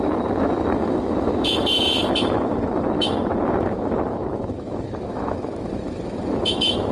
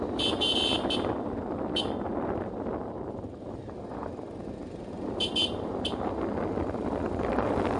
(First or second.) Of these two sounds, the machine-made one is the first